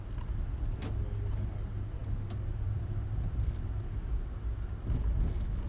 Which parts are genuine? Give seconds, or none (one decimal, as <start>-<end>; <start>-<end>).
0.0-5.7